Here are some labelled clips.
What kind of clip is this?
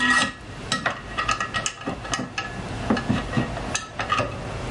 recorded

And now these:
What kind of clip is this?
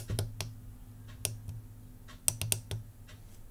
recorded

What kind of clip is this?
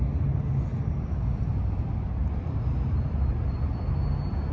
recorded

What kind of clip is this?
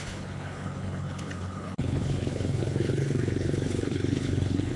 remade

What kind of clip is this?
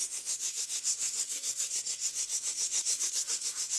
remade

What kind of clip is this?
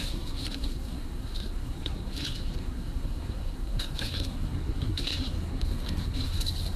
remade